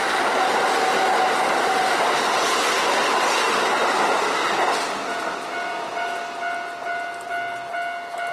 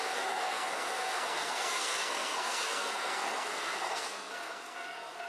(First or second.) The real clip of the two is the first